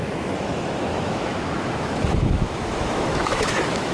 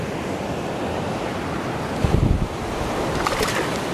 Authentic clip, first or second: second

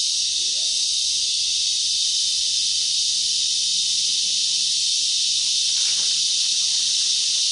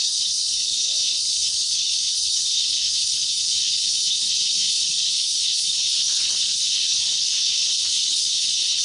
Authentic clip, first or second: first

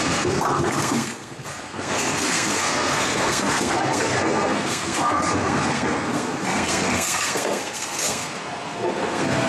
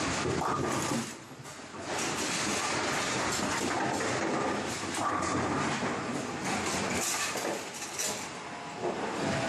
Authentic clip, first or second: second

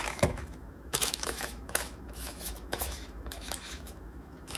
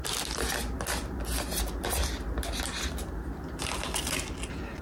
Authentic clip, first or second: second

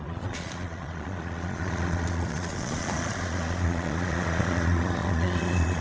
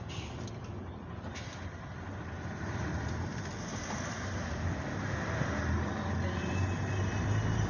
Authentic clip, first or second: second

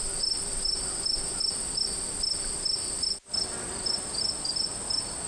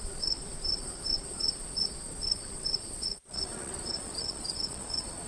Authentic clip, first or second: first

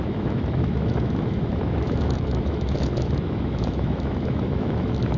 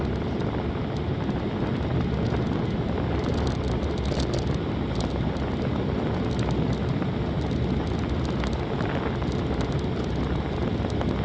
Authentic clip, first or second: second